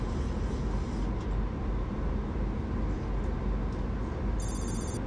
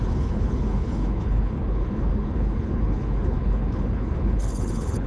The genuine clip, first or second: first